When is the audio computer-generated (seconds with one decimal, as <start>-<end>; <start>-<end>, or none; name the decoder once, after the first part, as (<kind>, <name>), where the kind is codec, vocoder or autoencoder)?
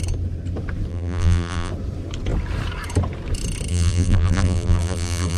0.9-1.7 (vocoder, BigVGAN v2); 3.7-5.4